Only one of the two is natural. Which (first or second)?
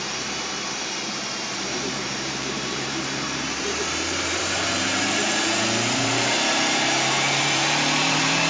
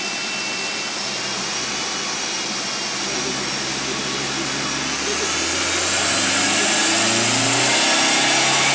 second